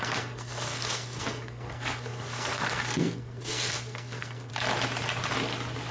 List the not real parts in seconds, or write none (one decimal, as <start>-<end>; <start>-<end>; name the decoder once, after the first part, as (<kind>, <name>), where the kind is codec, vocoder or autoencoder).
0.0-4.5 (codec, SNAC)